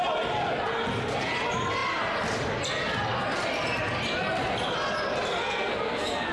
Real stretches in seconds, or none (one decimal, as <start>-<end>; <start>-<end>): 0.0-5.4